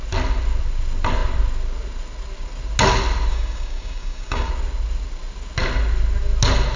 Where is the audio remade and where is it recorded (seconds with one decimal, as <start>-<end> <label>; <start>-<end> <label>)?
0.0-3.3 recorded; 3.3-4.5 remade; 4.5-6.8 recorded